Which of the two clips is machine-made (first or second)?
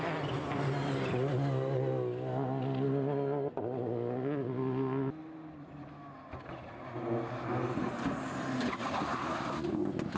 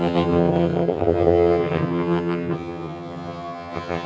second